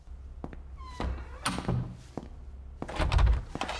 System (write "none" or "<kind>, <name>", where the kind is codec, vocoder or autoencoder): none